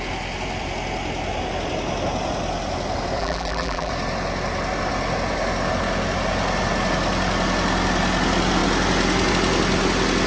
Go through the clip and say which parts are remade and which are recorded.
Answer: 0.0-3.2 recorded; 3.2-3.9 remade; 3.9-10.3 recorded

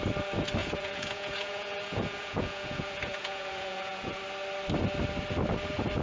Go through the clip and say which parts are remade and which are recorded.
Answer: 0.0-0.6 recorded; 0.6-4.2 remade; 4.2-6.0 recorded

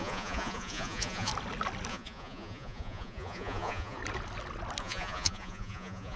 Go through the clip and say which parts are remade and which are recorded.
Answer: 0.0-1.3 remade; 1.3-1.9 recorded; 1.9-4.0 remade; 4.0-4.8 recorded; 4.8-6.2 remade

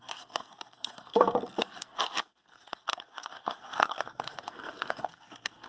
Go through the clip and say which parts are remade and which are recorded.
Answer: 0.0-5.7 remade

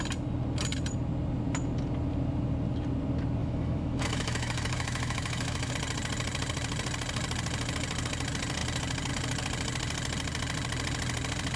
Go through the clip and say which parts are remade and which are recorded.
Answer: 0.0-3.4 recorded; 3.4-5.7 remade; 5.7-11.6 recorded

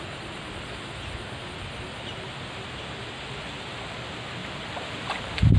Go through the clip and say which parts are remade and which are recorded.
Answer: 0.0-4.4 recorded; 4.4-5.6 remade

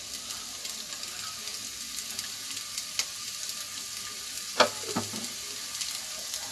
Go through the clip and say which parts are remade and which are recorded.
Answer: 0.0-6.5 recorded

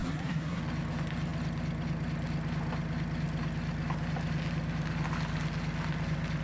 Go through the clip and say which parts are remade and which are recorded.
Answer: 0.0-0.6 remade; 0.6-6.4 recorded